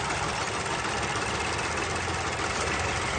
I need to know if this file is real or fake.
real